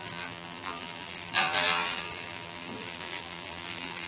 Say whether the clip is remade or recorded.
remade